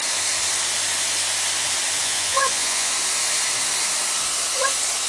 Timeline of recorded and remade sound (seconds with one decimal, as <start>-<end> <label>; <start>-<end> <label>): 0.0-2.0 recorded; 2.0-2.9 remade; 2.9-5.1 recorded